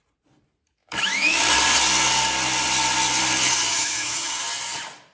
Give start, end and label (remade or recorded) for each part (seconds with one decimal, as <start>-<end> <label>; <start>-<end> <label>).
0.0-0.8 recorded; 0.8-1.4 remade; 1.4-3.7 recorded; 3.7-4.4 remade; 4.4-5.1 recorded